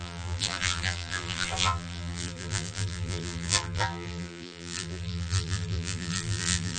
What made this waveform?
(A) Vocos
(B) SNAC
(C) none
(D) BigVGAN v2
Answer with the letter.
D